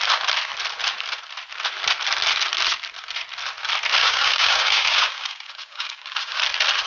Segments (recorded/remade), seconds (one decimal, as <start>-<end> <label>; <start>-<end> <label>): 0.0-4.0 recorded; 4.0-6.4 remade; 6.4-6.9 recorded